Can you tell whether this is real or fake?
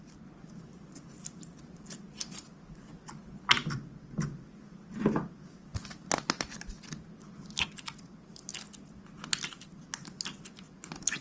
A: real